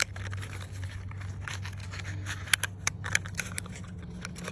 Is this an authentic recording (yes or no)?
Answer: yes